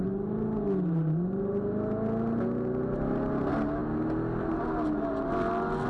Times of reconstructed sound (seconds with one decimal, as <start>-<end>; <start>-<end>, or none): none